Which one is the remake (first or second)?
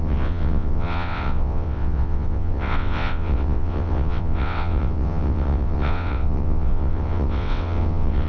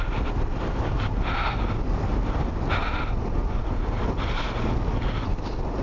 first